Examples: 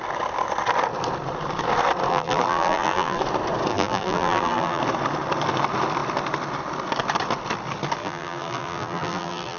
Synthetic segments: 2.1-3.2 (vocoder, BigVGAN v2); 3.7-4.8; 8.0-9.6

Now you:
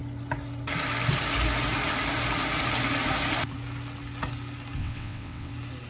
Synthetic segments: 4.8-5.5 (vocoder, WaveNeXt)

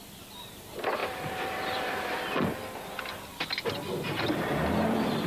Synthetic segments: none

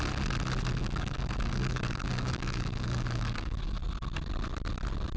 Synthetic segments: 0.8-3.8 (codec, DAC)